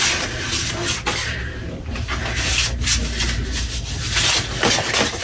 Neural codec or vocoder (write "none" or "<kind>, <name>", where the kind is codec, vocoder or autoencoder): none